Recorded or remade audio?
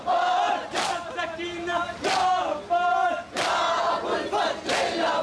recorded